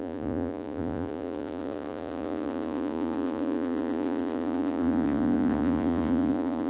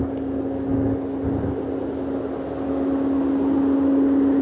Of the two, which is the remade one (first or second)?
first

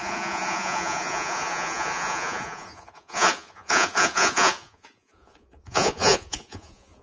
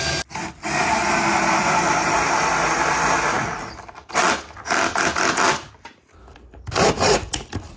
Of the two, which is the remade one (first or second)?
first